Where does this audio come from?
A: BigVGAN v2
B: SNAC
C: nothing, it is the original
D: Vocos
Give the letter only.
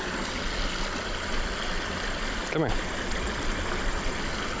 C